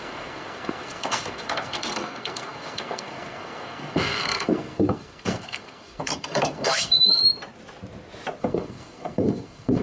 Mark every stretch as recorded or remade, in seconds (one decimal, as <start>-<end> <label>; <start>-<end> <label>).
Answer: 0.0-7.2 remade; 7.2-8.4 recorded; 8.4-9.8 remade